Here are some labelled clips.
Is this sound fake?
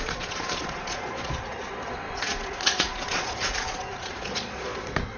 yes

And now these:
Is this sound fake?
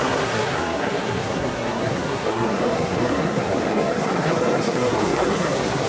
yes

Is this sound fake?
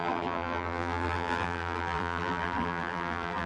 yes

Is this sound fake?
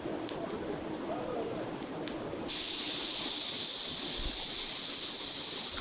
no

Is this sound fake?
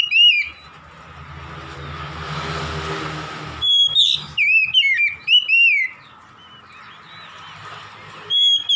no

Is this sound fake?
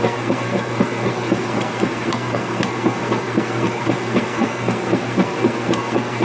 yes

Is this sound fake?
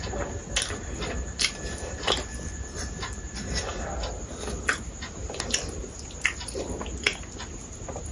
no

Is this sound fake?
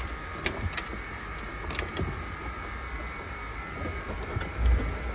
no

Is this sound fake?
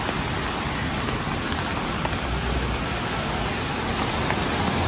no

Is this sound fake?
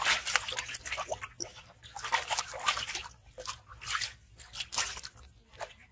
no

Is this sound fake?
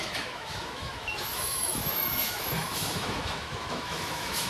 yes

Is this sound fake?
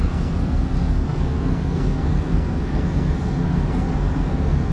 yes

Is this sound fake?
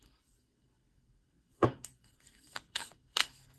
yes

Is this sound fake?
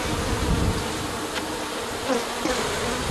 no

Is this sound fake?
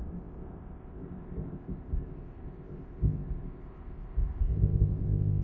yes